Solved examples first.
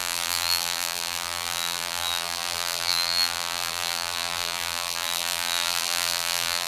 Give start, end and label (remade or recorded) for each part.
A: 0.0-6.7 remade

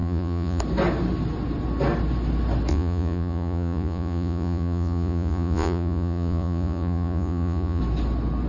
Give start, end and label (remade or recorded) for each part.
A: 0.0-0.6 remade; 0.6-2.7 recorded; 2.7-7.8 remade; 7.8-8.5 recorded

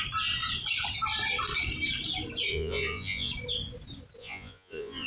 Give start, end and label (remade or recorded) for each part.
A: 0.0-2.5 recorded; 2.5-3.3 remade; 3.3-4.2 recorded; 4.2-5.1 remade

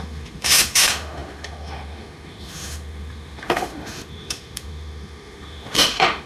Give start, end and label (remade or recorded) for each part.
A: 0.0-6.3 remade

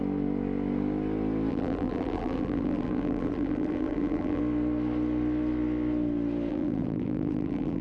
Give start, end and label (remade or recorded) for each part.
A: 0.0-1.5 recorded; 1.5-4.4 remade; 4.4-6.5 recorded; 6.5-7.8 remade

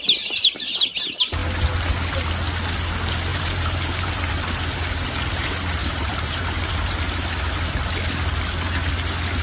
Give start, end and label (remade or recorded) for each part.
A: 0.0-3.3 recorded; 3.3-4.3 remade; 4.3-5.8 recorded; 5.8-6.9 remade; 6.9-9.4 recorded

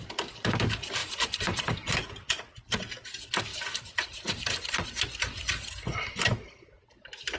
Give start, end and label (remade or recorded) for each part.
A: 0.0-1.0 recorded; 1.0-2.6 remade; 2.6-3.5 recorded; 3.5-4.8 remade; 4.8-7.4 recorded

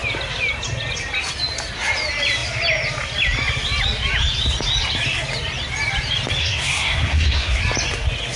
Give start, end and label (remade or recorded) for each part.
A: 0.0-6.4 recorded; 6.4-7.6 remade; 7.6-8.4 recorded